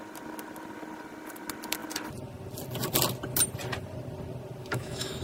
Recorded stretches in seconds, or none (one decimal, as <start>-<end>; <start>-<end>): 0.0-4.6